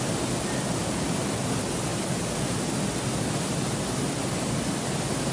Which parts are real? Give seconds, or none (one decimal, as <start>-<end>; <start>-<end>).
0.0-0.8; 1.4-1.9